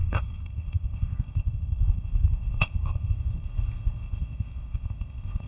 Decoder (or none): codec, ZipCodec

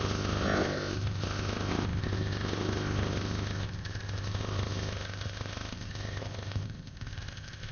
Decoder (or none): codec, ZipCodec